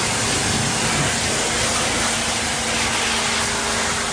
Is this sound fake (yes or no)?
no